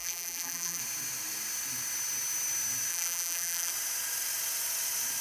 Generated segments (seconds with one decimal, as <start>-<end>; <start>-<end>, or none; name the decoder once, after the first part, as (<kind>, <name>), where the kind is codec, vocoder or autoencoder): 0.0-0.8 (vocoder, BigVGAN v2); 2.9-3.7